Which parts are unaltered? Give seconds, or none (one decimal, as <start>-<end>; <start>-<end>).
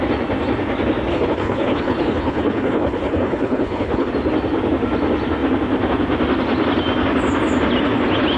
0.0-1.1; 4.1-8.4